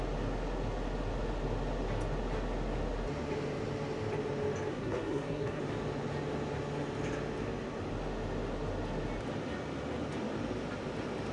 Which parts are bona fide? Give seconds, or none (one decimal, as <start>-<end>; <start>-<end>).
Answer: 0.0-4.7; 5.6-11.3

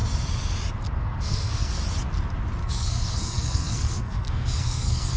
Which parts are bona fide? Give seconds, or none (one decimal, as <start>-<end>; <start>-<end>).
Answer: 0.0-1.0; 1.8-2.6